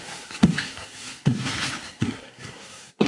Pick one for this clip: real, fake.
fake